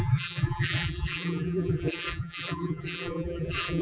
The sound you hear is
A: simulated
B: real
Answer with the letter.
A